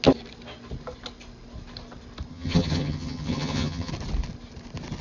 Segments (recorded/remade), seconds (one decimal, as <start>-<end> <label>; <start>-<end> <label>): 0.0-2.3 recorded; 2.3-3.9 remade; 3.9-5.0 recorded